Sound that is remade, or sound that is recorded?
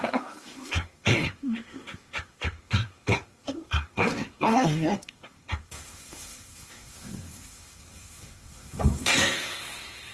remade